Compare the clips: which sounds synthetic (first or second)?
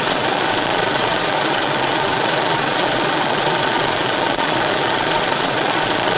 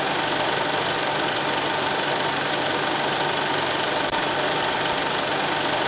first